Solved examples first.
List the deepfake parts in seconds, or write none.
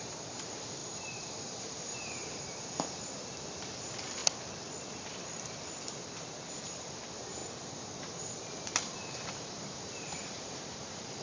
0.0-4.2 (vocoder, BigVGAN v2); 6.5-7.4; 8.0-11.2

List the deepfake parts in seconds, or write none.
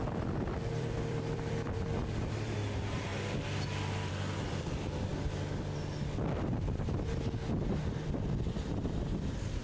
0.0-3.1 (vocoder, BigVGAN v2); 4.1-5.1; 7.9-9.6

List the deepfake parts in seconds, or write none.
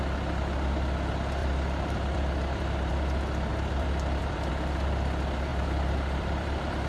1.4-2.9 (vocoder, BigVGAN v2); 3.5-4.5; 5.5-6.9